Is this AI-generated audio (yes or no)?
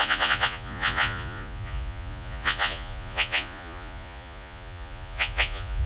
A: yes